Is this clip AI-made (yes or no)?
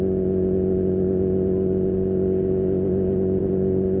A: no